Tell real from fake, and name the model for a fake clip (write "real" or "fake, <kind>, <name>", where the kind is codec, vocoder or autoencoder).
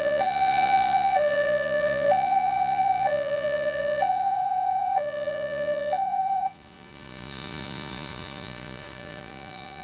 fake, vocoder, Vocos